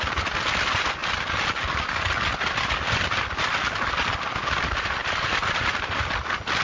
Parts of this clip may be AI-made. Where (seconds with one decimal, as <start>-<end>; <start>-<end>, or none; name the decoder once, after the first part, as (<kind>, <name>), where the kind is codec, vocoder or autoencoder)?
5.0-6.6 (vocoder, BigVGAN v2)